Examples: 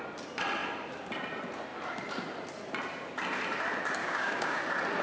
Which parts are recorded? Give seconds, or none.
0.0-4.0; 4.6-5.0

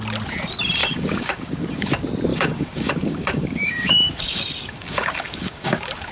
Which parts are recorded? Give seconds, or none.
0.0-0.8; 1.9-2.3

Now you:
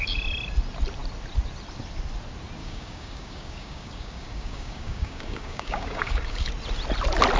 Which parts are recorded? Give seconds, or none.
0.0-2.6; 6.5-7.4

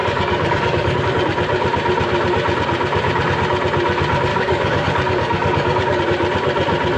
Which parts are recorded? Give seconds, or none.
1.0-4.3; 6.0-7.0

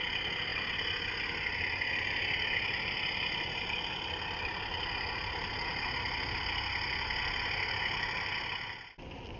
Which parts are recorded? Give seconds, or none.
0.0-9.4